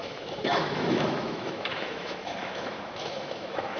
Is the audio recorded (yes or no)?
no